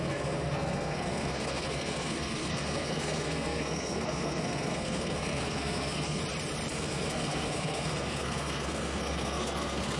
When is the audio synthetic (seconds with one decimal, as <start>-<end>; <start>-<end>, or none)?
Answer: 0.0-6.2; 6.7-10.0